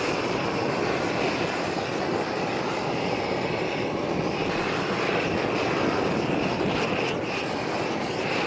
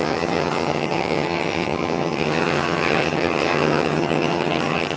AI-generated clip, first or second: second